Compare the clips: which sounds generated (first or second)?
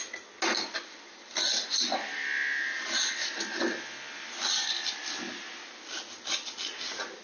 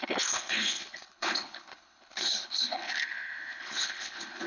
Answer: second